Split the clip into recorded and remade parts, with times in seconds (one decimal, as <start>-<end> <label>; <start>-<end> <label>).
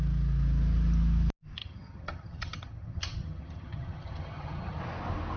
0.0-1.6 recorded; 1.6-4.8 remade; 4.8-5.4 recorded